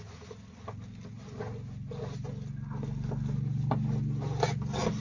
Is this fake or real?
real